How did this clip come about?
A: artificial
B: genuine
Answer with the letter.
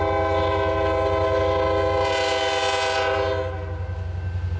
B